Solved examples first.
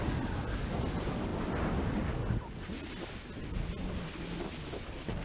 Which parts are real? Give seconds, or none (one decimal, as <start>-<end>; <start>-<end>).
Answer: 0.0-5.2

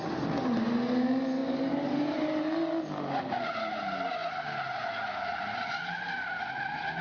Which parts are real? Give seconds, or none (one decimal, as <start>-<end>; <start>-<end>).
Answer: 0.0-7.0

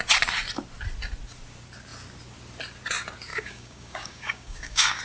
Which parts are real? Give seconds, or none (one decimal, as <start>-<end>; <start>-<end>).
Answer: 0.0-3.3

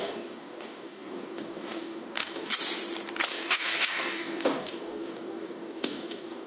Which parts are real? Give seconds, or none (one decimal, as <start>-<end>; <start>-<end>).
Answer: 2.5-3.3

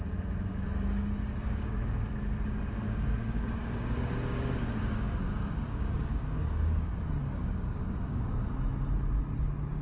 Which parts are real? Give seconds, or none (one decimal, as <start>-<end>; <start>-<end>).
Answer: 0.0-0.5; 2.1-3.2; 6.9-7.4; 8.3-9.8

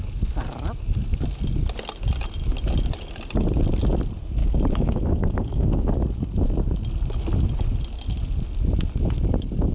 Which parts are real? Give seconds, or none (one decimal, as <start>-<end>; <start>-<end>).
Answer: 0.0-4.4; 5.9-9.7

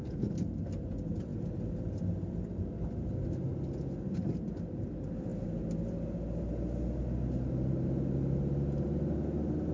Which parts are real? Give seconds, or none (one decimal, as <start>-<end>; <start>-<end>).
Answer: 0.0-9.7

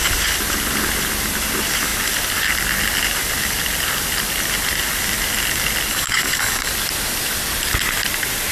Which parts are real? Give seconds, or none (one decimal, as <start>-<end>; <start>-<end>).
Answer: 0.0-5.9; 6.7-8.5